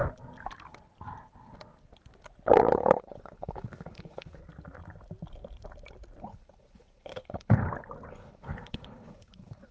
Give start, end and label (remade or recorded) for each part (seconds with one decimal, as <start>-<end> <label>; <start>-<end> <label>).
0.0-2.7 recorded; 2.7-4.4 remade; 4.4-6.2 recorded; 6.2-7.6 remade; 7.6-8.1 recorded; 8.1-9.7 remade